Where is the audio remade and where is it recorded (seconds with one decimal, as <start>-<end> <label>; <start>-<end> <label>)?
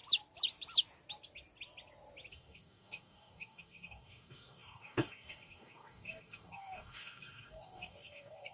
0.0-2.3 recorded; 2.3-8.5 remade